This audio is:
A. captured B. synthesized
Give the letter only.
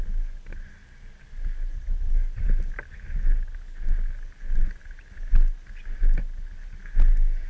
A